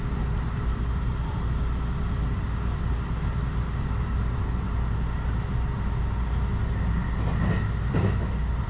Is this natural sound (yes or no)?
yes